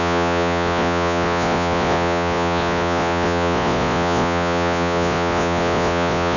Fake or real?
fake